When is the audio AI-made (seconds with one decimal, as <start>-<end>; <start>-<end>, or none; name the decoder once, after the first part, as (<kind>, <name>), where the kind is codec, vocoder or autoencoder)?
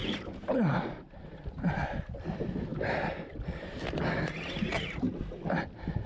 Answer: 0.0-2.0 (vocoder, BigVGAN v2); 2.7-3.8